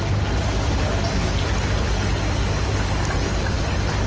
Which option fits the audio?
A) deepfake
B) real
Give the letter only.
B